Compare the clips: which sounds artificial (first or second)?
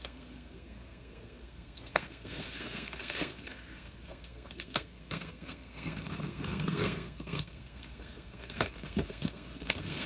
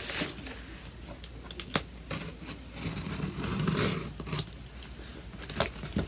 first